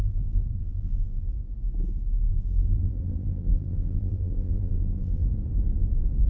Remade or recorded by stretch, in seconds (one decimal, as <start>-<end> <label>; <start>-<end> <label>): 0.0-1.3 remade; 1.3-2.3 recorded; 2.3-5.2 remade; 5.2-6.3 recorded